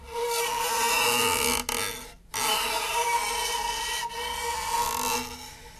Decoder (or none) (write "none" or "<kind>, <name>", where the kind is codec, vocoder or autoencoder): none